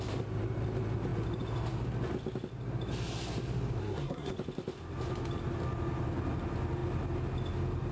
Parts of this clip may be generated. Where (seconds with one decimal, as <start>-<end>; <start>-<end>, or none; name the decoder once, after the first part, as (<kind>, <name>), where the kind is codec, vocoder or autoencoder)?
3.8-4.3 (codec, SNAC)

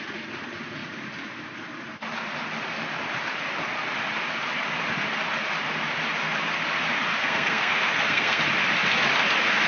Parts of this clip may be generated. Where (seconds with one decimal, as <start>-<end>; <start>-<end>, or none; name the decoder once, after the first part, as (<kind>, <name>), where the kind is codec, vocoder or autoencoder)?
7.2-8.4 (codec, SNAC)

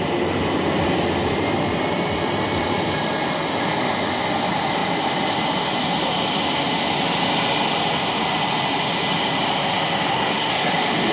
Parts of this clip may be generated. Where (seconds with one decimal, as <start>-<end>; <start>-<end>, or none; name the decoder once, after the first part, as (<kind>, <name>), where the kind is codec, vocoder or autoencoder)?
10.1-10.7 (codec, SNAC)

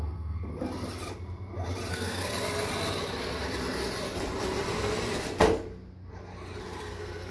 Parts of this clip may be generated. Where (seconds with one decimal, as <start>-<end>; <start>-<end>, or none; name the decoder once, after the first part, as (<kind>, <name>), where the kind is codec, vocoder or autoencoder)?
0.0-0.5 (codec, SNAC); 1.9-2.3; 6.6-7.3

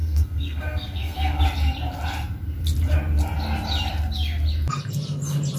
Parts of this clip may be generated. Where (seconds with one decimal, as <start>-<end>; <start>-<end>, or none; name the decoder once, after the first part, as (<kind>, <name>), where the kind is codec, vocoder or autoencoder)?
0.0-1.4 (codec, SNAC)

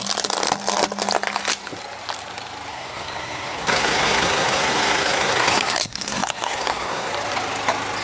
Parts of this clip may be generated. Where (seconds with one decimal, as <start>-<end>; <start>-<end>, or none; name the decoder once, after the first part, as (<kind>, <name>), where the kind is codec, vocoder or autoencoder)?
2.7-7.1 (codec, SNAC)

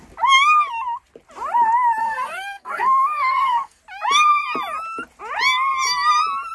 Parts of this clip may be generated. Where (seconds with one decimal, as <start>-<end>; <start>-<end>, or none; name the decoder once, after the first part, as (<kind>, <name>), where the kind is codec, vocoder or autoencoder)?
2.0-3.8 (codec, SNAC)

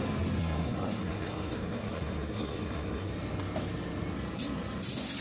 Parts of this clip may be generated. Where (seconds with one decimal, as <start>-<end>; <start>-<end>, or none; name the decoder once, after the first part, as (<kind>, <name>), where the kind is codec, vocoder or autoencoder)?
0.4-3.1 (codec, SNAC)